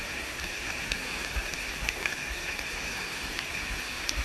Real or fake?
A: fake